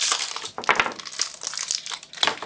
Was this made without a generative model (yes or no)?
yes